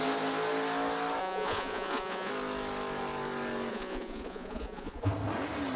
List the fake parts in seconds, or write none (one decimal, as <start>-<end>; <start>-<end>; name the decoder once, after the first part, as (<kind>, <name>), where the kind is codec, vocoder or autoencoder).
1.2-2.3 (vocoder, Vocos); 3.7-5.1